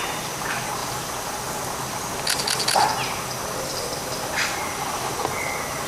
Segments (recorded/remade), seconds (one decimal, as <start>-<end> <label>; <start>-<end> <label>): 0.0-5.9 recorded